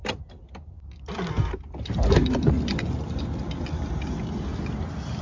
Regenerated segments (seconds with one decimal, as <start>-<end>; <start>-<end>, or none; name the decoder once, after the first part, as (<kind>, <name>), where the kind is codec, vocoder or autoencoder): none